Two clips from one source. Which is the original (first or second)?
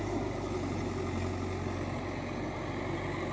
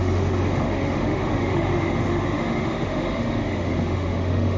first